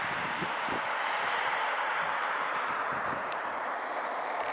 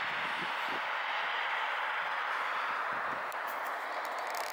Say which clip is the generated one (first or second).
first